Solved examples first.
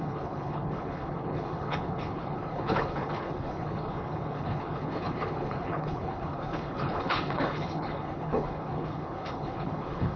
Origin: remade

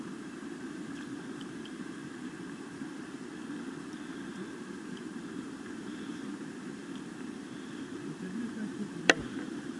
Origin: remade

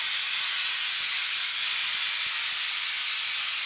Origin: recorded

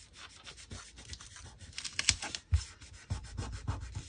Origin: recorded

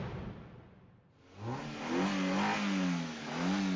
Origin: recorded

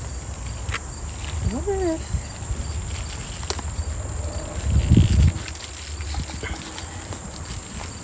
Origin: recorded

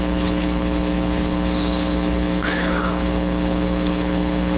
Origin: remade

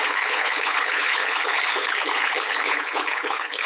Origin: remade